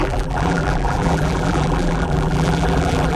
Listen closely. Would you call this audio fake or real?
fake